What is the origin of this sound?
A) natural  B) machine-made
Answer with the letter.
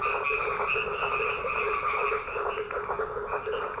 A